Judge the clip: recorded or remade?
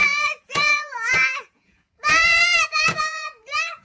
remade